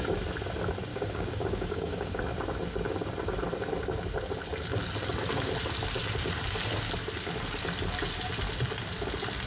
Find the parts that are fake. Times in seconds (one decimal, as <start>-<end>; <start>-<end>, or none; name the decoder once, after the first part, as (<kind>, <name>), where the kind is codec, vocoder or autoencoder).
0.9-2.2 (codec, DAC)